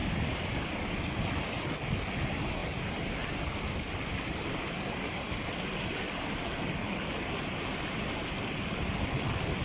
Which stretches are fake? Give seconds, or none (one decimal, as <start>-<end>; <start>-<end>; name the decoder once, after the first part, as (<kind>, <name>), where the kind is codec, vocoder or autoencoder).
none